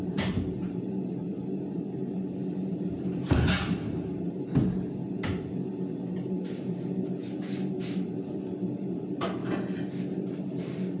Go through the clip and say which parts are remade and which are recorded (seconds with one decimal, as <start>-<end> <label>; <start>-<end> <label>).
0.0-9.4 remade; 9.4-10.0 recorded; 10.0-11.0 remade